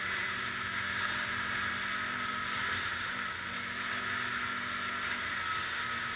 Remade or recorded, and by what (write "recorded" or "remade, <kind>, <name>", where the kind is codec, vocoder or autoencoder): recorded